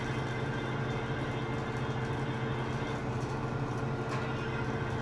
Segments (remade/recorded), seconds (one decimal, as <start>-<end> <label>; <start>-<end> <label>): 0.0-3.0 recorded; 3.0-3.8 remade; 3.8-5.0 recorded